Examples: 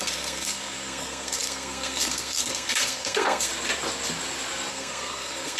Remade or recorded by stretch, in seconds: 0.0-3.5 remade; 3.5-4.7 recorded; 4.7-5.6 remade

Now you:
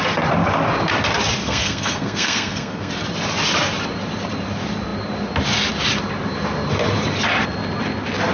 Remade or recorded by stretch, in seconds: 0.0-1.4 recorded; 1.4-2.9 remade; 2.9-8.3 recorded

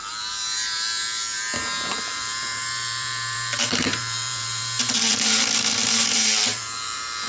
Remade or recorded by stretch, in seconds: 0.0-1.9 recorded; 1.9-7.3 remade

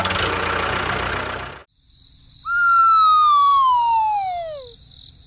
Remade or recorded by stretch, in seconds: 0.0-5.3 recorded